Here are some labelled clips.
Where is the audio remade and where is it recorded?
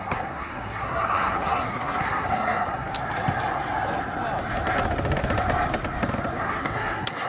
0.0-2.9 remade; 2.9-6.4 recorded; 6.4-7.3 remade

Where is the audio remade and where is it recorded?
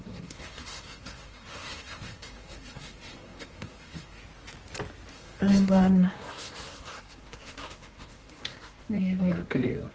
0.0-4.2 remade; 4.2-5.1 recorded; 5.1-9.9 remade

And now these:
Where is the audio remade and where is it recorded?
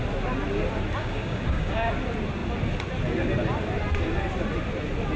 0.0-1.0 recorded; 1.0-1.9 remade; 1.9-5.2 recorded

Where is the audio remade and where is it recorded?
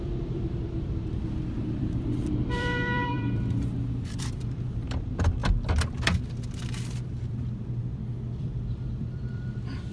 0.0-5.4 remade; 5.4-7.0 recorded; 7.0-7.8 remade; 7.8-8.4 recorded; 8.4-9.9 remade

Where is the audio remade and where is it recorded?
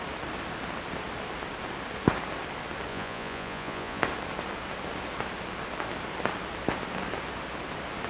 0.0-2.9 recorded; 2.9-4.0 remade; 4.0-8.1 recorded